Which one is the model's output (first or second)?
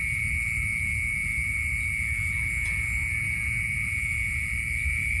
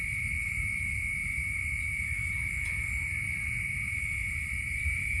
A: second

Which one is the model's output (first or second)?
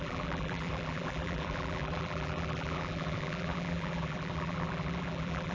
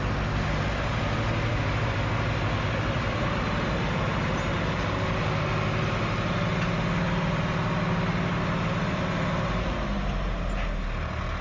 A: first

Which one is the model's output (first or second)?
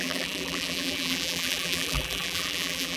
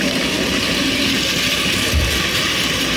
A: first